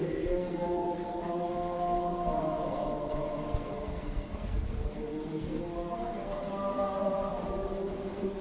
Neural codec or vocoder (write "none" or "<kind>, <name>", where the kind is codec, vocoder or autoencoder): codec, SNAC